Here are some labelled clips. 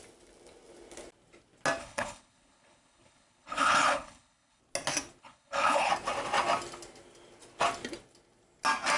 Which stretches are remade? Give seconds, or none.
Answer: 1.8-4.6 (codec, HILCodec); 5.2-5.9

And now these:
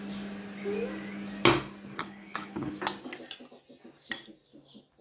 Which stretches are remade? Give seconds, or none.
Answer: 2.0-2.7 (codec, HILCodec)

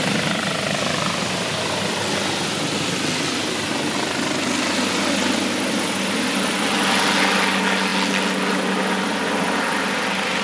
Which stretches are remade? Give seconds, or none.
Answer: none

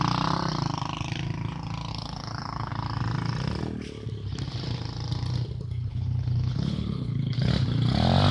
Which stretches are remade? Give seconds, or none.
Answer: 1.9-2.7 (codec, HILCodec); 5.9-7.5